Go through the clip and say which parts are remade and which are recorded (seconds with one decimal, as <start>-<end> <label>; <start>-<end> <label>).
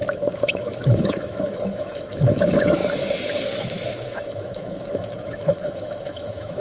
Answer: 0.0-2.8 remade; 2.8-3.4 recorded; 3.4-6.6 remade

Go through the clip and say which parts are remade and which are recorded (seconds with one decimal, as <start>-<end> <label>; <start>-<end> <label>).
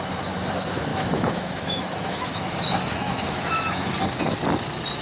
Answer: 0.0-0.9 recorded; 0.9-3.9 remade; 3.9-5.0 recorded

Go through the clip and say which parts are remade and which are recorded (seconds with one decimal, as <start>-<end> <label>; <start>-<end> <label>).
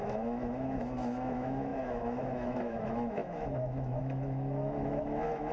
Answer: 0.0-5.5 remade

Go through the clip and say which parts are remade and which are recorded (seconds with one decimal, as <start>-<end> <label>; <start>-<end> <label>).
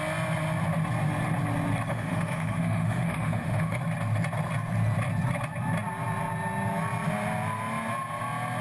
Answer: 0.0-1.9 recorded; 1.9-3.8 remade; 3.8-8.6 recorded